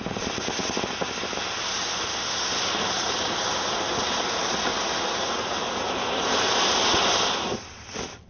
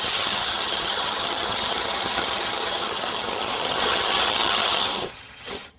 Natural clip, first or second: first